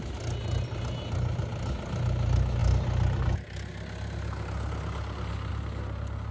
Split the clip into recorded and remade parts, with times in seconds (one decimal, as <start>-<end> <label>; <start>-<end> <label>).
0.0-6.3 recorded